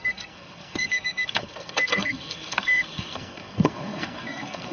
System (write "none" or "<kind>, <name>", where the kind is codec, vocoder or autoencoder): codec, SNAC